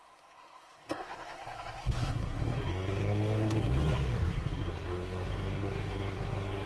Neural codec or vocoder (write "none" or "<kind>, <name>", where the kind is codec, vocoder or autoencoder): codec, SNAC